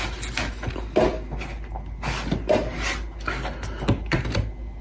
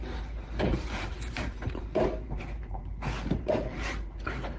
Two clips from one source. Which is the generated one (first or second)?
second